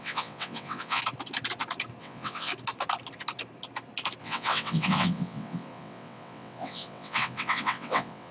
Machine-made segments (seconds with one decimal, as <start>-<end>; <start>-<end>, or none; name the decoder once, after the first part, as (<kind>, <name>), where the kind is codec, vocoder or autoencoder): 0.0-1.0 (vocoder, WaveNeXt); 2.0-2.5; 4.2-8.3